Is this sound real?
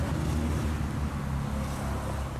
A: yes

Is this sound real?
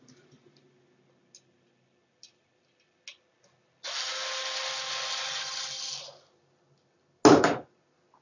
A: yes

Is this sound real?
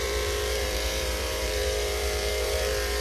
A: no